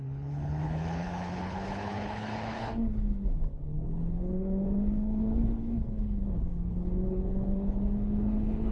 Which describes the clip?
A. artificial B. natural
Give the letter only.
A